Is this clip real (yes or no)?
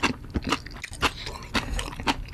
yes